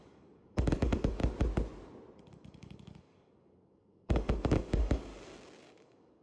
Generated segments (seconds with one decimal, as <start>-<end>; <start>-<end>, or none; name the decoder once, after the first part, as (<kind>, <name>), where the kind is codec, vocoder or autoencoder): 0.0-1.2 (codec, DAC); 2.2-5.1; 5.6-6.2